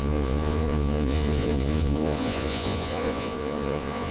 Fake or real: fake